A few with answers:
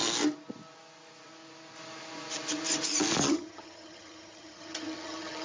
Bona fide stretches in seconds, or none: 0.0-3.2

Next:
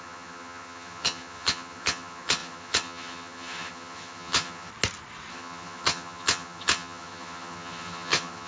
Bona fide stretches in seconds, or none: 4.7-5.3

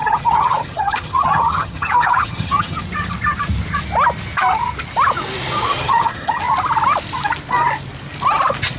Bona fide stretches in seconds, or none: 2.8-5.7; 6.4-8.8

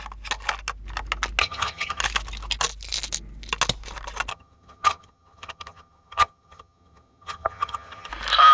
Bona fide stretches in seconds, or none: 0.0-1.4; 2.0-4.3; 8.1-8.5